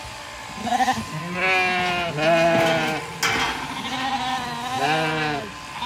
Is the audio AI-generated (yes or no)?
no